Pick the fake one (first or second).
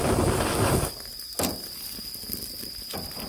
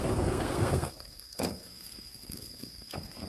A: second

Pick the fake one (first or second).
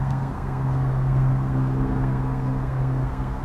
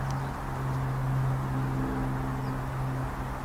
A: first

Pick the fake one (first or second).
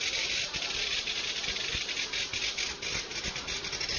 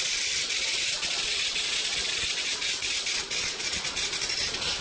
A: second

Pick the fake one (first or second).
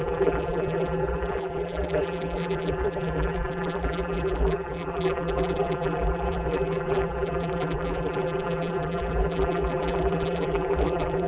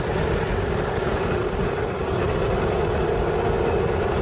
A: first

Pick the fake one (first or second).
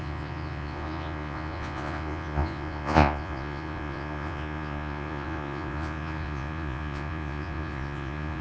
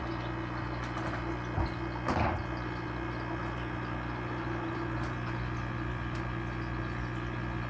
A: first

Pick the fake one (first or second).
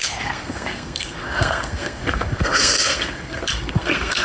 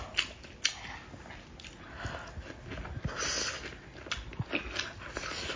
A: first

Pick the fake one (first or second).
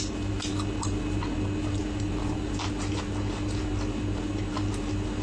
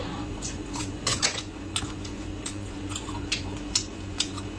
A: second